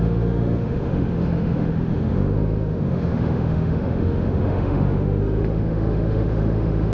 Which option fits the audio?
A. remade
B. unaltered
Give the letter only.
A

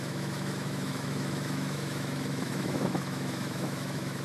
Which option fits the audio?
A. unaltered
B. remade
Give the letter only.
B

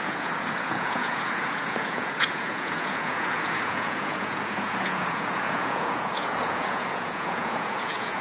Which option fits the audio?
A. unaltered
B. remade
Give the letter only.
B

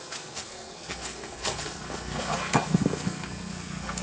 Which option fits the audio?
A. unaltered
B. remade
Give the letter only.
B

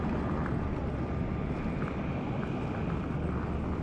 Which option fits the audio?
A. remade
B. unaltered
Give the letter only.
B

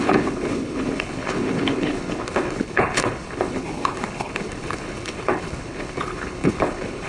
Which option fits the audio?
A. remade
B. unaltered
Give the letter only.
A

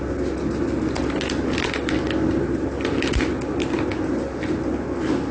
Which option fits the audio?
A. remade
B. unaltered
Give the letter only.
B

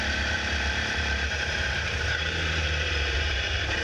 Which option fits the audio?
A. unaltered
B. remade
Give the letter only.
B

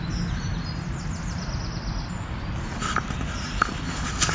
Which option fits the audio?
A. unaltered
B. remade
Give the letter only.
A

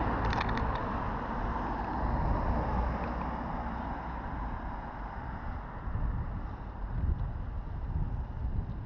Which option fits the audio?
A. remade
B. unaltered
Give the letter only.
B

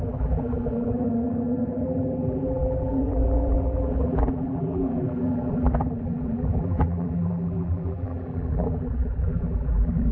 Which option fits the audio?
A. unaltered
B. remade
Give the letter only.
B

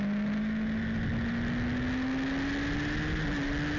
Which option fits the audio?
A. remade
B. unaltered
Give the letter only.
B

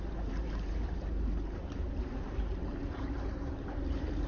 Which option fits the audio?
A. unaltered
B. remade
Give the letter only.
B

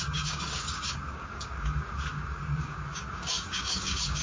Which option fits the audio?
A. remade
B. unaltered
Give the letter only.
A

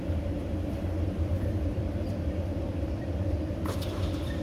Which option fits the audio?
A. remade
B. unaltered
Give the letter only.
A